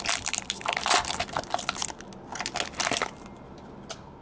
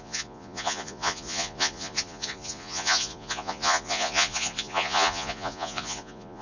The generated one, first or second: second